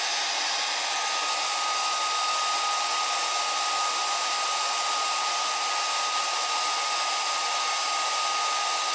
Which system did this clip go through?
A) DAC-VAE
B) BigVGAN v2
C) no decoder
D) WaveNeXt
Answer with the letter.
C